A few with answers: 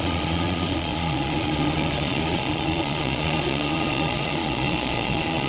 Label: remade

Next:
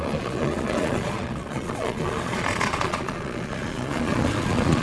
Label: remade